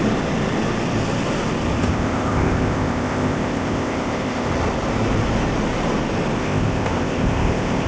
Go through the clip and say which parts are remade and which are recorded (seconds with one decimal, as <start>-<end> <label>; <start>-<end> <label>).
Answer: 0.0-1.8 recorded; 1.8-4.5 remade; 4.5-6.4 recorded; 6.4-7.9 remade